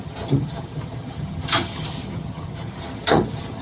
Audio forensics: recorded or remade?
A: remade